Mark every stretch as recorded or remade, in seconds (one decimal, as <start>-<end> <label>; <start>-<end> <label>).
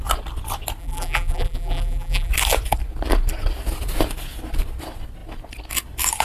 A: 0.0-0.8 recorded; 0.8-2.3 remade; 2.3-6.2 recorded